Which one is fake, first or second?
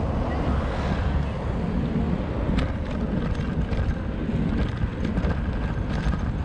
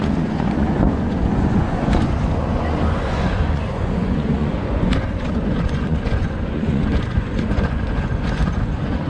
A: second